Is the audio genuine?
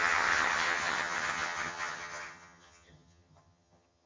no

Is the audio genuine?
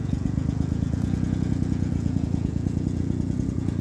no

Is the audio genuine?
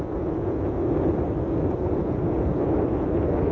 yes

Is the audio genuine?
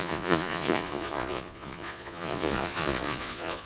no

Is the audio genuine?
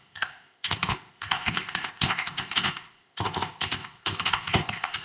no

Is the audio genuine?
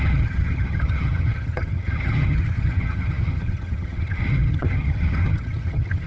no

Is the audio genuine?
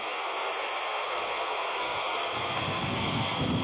no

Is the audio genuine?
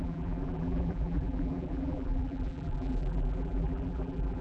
no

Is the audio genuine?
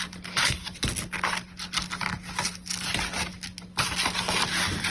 yes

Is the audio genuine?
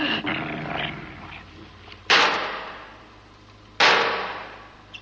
yes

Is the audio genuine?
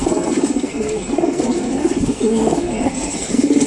no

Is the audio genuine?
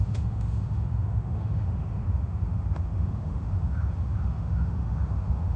no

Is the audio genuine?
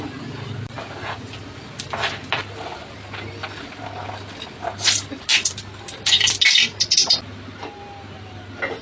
yes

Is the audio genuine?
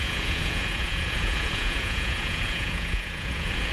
no